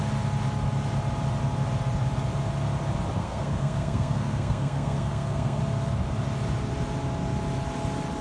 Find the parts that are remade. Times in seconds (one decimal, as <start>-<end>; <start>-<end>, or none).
3.2-5.6